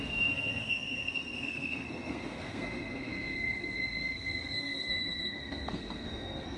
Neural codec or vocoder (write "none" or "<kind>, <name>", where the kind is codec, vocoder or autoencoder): codec, SNAC